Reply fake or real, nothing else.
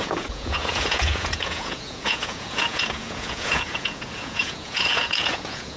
fake